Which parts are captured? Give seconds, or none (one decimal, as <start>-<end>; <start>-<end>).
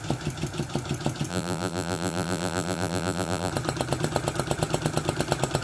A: 0.0-1.3; 3.5-5.6